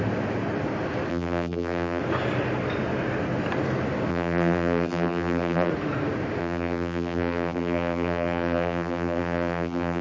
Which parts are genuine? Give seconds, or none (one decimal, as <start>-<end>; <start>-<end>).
0.0-1.1; 2.0-4.1; 5.7-6.4